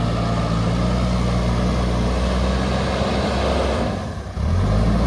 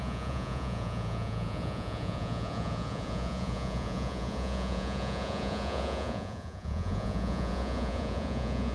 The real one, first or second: first